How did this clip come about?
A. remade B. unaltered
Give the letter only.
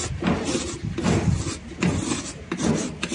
B